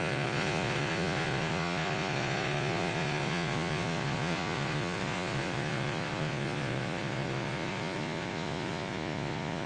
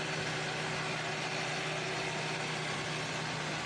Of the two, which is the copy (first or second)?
first